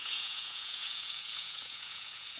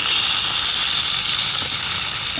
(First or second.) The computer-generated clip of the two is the first